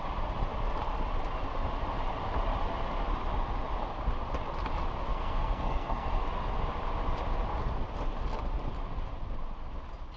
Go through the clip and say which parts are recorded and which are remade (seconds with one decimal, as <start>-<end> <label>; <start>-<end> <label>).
0.0-5.1 recorded; 5.1-6.2 remade; 6.2-10.2 recorded

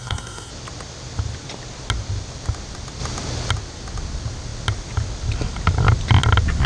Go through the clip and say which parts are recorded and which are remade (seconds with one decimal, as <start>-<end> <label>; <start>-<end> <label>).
0.0-0.5 remade; 0.5-6.7 recorded

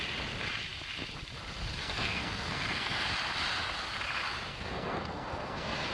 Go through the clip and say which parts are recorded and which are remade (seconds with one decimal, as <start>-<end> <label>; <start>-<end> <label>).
0.0-1.8 recorded; 1.8-3.1 remade; 3.1-4.5 recorded; 4.5-5.9 remade

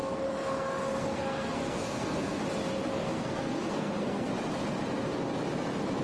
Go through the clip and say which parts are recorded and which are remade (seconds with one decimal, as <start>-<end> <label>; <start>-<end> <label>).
0.0-2.4 remade; 2.4-2.9 recorded; 2.9-4.3 remade; 4.3-6.0 recorded

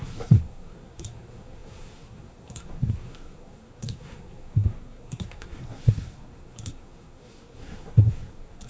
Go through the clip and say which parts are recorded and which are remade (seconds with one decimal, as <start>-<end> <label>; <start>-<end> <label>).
0.0-8.7 remade

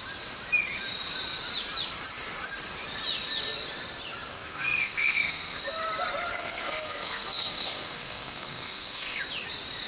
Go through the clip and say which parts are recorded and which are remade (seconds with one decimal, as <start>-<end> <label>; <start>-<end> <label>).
0.0-4.3 recorded; 4.3-5.6 remade; 5.6-6.3 recorded; 6.3-9.2 remade; 9.2-9.9 recorded

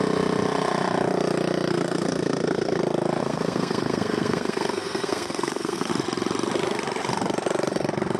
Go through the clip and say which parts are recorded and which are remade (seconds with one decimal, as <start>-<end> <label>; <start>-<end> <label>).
0.0-1.7 recorded; 1.7-2.8 remade; 2.8-3.2 recorded; 3.2-5.9 remade; 5.9-8.2 recorded